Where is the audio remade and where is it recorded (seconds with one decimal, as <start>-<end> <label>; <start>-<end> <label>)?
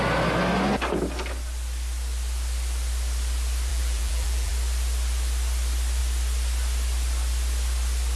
0.0-3.7 recorded; 3.7-4.5 remade; 4.5-8.2 recorded